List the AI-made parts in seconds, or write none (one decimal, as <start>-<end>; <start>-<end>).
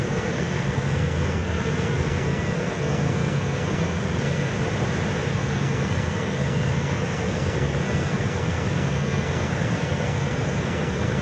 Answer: 0.0-4.5; 5.3-11.2